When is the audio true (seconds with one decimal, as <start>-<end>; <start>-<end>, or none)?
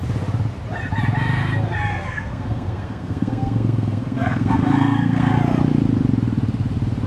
0.0-1.9; 5.3-7.1